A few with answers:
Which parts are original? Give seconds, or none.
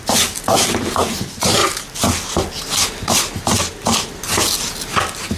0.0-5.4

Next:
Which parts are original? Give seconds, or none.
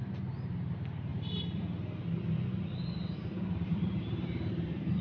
0.0-1.1; 1.7-3.0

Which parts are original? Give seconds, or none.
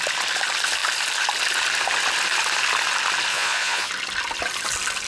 0.0-3.3; 3.9-5.1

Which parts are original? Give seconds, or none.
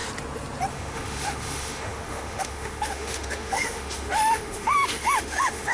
0.0-0.7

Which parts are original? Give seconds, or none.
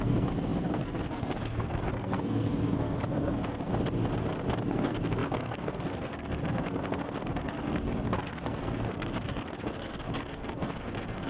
3.7-4.7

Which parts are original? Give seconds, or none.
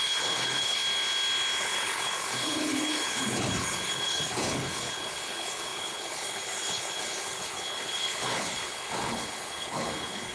0.8-1.6